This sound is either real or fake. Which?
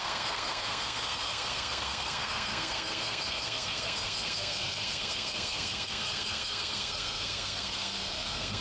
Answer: fake